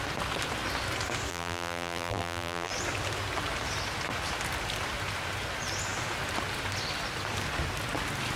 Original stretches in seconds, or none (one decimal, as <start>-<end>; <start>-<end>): 0.0-1.3; 2.7-8.4